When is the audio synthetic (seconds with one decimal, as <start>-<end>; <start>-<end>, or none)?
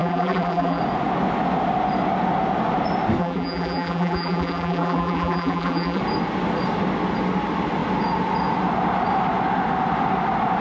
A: 0.0-0.8; 3.2-6.0